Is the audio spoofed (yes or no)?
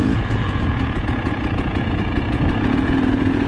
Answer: yes